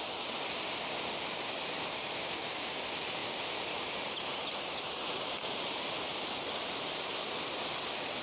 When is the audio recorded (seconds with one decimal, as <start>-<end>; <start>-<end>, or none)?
0.0-3.2; 7.5-8.2